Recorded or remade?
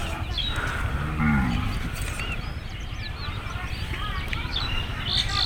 recorded